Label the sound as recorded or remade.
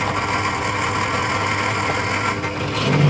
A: recorded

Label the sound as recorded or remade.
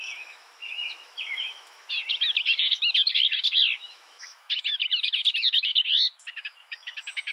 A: remade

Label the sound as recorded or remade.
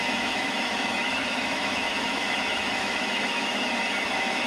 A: remade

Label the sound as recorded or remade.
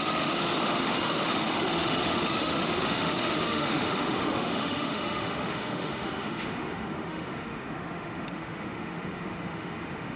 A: remade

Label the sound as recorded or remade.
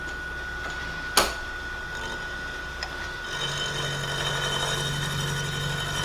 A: recorded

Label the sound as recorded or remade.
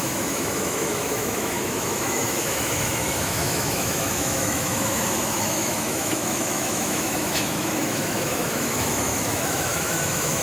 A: remade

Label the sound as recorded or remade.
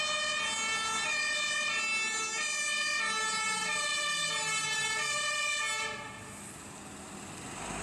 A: recorded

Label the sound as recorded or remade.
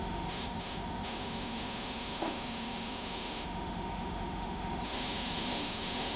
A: remade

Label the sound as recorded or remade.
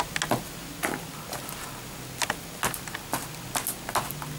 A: recorded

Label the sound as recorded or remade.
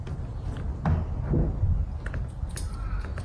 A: recorded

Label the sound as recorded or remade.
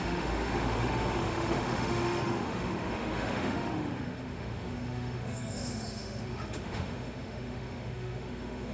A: remade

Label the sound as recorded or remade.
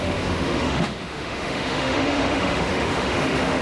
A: remade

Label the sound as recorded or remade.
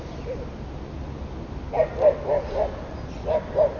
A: recorded